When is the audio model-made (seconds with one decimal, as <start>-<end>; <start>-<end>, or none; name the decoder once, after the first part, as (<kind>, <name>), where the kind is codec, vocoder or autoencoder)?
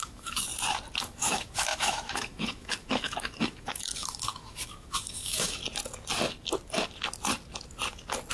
0.0-0.5 (autoencoder, DAC-VAE); 1.0-5.6